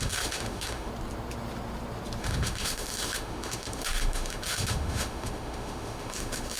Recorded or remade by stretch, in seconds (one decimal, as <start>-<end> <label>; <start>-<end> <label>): 0.0-0.9 remade; 0.9-2.2 recorded; 2.2-6.6 remade